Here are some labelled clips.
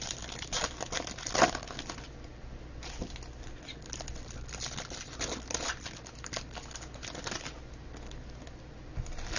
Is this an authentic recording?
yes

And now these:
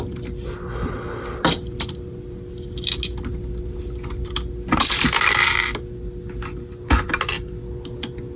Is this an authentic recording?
yes